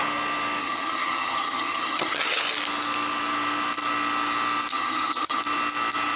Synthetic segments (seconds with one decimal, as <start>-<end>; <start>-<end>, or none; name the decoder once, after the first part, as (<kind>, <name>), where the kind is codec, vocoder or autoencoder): 0.6-2.4 (vocoder, HiFi-GAN); 4.7-5.4